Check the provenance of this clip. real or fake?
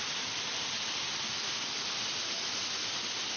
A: real